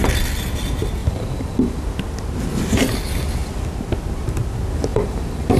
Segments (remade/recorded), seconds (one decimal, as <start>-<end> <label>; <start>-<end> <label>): 0.0-1.0 recorded; 1.0-1.8 remade; 1.8-4.9 recorded; 4.9-5.6 remade